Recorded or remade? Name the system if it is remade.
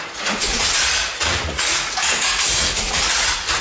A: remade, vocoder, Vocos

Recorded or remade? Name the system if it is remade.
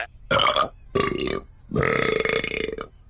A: recorded